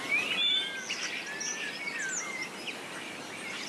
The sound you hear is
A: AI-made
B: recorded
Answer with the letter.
B